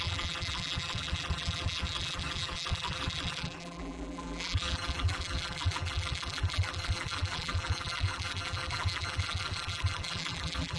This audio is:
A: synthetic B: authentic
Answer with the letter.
A